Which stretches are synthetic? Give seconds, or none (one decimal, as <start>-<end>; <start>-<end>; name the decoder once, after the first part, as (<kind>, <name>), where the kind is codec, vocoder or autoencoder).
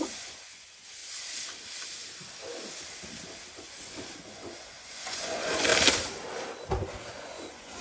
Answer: 0.0-1.0 (vocoder, Vocos); 3.5-5.7; 7.1-7.8